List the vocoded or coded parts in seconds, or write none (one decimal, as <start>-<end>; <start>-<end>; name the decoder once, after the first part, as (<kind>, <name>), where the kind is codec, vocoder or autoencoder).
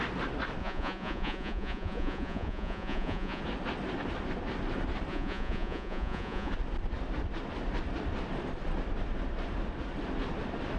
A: 0.6-3.4 (vocoder, Vocos); 5.1-6.5